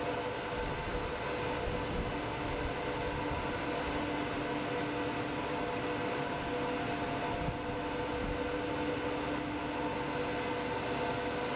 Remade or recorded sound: recorded